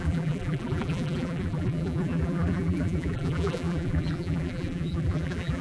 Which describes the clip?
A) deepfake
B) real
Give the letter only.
A